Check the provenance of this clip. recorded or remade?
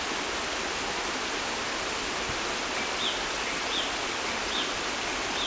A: recorded